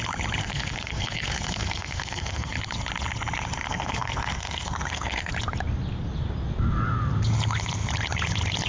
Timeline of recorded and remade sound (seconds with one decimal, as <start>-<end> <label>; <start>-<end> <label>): 0.0-0.4 recorded; 0.4-2.5 remade; 2.5-3.7 recorded; 3.7-5.3 remade; 5.3-8.7 recorded

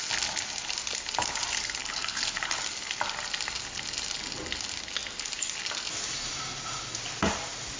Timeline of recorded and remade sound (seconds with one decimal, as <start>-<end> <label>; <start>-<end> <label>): 0.0-1.8 recorded; 1.8-2.6 remade; 2.6-7.8 recorded